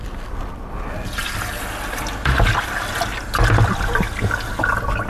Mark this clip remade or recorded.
recorded